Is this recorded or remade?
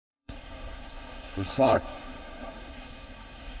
remade